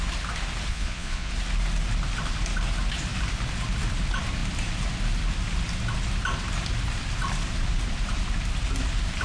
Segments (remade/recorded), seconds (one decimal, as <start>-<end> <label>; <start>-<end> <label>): 0.0-0.7 recorded; 0.7-1.3 remade; 1.3-9.2 recorded